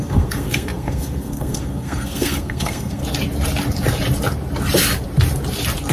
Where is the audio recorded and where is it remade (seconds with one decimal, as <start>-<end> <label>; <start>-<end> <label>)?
0.0-3.0 remade; 3.0-5.9 recorded